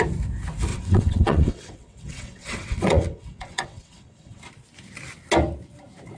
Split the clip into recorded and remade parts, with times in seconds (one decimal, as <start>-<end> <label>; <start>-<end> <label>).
0.0-0.7 recorded; 0.7-4.4 remade; 4.4-6.2 recorded